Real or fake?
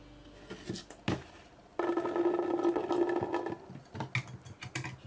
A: real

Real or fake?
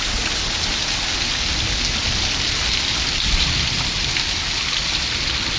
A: real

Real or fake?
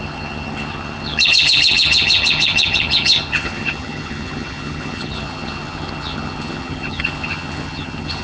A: fake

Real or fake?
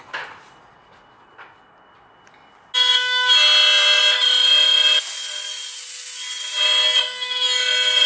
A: real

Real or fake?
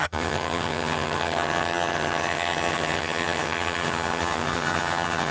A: fake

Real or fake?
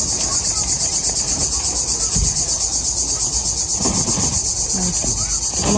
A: real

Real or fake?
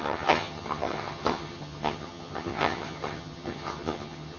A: fake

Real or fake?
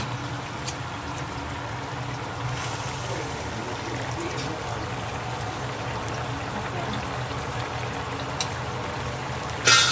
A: real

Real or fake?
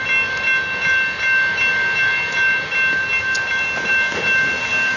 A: real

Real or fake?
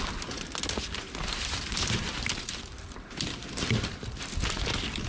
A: real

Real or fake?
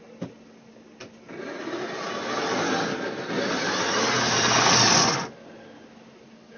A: real